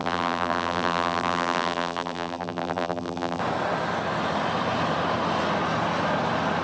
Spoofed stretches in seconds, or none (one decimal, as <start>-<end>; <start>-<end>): 0.0-3.4